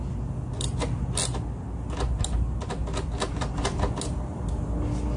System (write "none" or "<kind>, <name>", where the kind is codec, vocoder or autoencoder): none